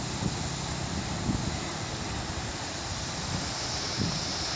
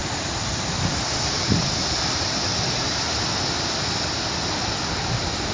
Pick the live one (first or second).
first